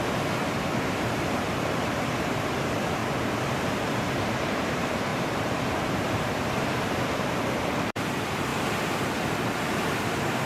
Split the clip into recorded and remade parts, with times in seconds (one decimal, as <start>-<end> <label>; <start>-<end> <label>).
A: 0.0-3.0 remade; 3.0-4.2 recorded; 4.2-8.5 remade; 8.5-9.6 recorded; 9.6-10.5 remade